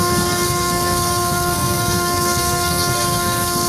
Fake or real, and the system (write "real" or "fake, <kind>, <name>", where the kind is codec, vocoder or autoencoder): fake, codec, SNAC